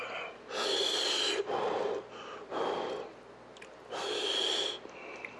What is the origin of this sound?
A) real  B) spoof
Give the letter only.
A